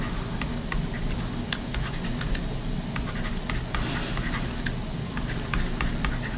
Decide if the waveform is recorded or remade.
recorded